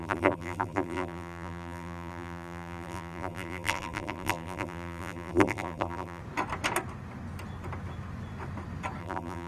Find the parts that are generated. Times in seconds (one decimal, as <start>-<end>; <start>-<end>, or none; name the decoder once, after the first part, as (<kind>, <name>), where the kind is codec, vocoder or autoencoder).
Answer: 0.0-6.2 (vocoder, BigVGAN v2); 9.0-9.5